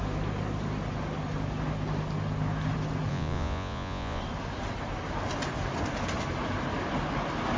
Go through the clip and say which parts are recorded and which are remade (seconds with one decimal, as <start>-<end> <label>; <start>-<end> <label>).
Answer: 0.0-3.1 recorded; 3.1-4.2 remade; 4.2-7.6 recorded

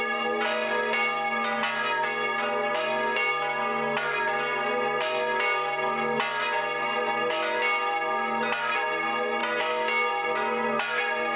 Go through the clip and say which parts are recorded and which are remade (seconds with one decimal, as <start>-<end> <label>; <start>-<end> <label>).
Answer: 0.0-11.4 recorded

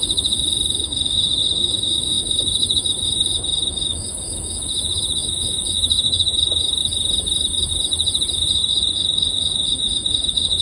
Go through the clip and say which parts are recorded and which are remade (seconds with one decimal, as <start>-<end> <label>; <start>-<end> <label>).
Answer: 0.0-6.8 remade; 6.8-8.3 recorded; 8.3-10.6 remade